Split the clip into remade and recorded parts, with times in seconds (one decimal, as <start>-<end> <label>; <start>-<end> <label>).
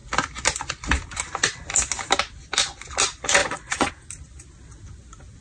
0.0-3.4 recorded; 3.4-3.9 remade; 3.9-5.4 recorded